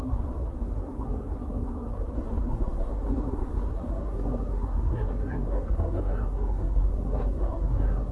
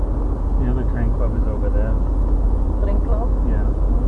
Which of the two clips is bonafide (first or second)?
second